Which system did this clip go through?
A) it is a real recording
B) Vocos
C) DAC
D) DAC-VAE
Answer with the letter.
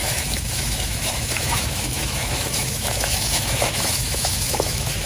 D